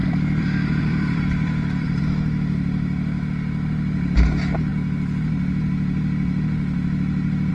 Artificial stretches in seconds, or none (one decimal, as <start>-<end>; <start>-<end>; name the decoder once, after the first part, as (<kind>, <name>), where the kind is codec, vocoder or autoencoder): 0.0-2.0 (vocoder, BigVGAN v2)